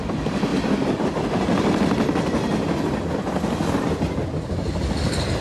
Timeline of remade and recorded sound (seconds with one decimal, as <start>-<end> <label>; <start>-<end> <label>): 0.0-5.4 recorded